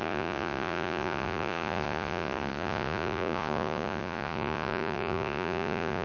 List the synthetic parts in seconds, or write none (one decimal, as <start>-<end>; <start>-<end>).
0.0-6.0